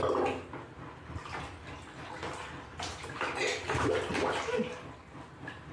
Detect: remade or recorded recorded